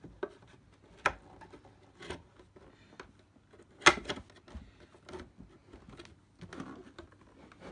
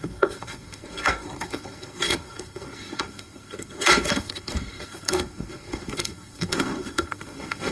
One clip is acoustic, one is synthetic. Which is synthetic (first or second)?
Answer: second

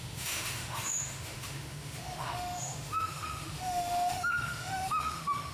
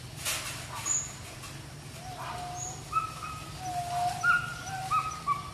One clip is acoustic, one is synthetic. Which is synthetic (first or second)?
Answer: first